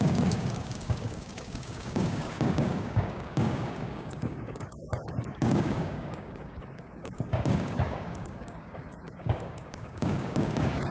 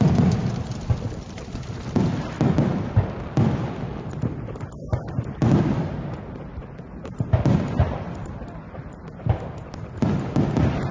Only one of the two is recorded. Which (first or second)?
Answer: second